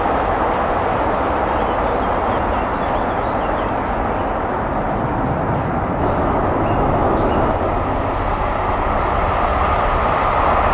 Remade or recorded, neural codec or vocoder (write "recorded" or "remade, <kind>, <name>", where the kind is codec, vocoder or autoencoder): recorded